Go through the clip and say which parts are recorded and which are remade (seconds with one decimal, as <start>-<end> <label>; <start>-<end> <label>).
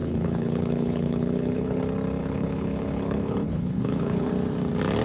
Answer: 0.0-1.8 remade; 1.8-2.2 recorded; 2.2-4.3 remade; 4.3-5.0 recorded